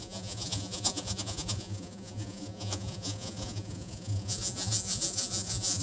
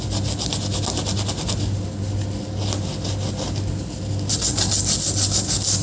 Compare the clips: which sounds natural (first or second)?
second